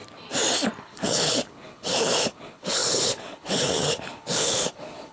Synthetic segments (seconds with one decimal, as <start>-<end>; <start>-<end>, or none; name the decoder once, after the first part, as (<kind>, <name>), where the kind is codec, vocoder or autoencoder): 0.8-5.1 (codec, HILCodec)